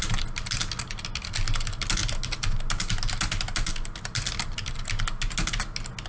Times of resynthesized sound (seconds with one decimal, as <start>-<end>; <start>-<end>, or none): none